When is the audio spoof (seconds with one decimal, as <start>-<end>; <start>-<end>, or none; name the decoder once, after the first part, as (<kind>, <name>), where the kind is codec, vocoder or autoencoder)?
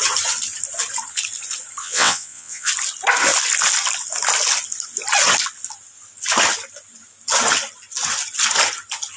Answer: 1.8-2.7 (vocoder, WaveNeXt)